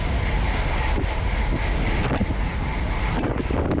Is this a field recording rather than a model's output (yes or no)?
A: yes